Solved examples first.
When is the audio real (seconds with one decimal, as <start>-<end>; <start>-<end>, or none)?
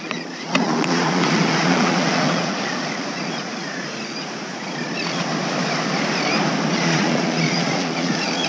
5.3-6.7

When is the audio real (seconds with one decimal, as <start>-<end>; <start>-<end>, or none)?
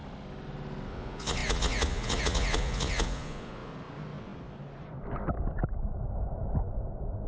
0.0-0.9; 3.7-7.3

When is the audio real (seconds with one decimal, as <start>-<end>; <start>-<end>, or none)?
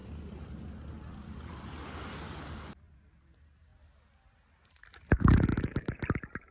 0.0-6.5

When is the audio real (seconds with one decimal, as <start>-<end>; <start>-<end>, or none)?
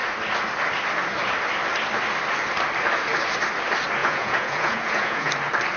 0.0-4.0; 5.3-5.8